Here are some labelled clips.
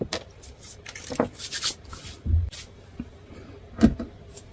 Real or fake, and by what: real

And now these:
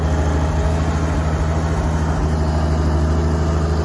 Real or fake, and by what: real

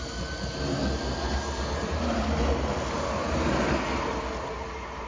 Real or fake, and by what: real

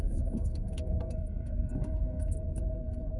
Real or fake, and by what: fake, codec, SNAC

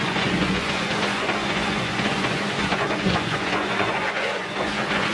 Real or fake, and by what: fake, vocoder, Vocos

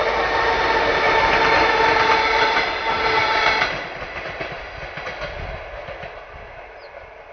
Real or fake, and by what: real